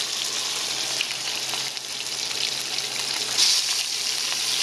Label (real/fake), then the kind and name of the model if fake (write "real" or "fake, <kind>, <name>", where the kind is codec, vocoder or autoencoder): real